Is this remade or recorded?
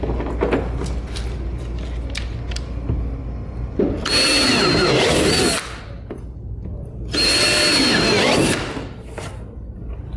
recorded